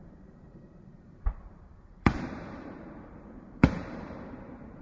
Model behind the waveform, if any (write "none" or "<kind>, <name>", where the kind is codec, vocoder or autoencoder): vocoder, BigVGAN v2